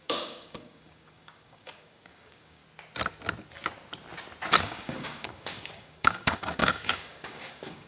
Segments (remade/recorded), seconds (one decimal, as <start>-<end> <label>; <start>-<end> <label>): 0.0-2.6 remade; 2.6-4.6 recorded; 4.6-7.9 remade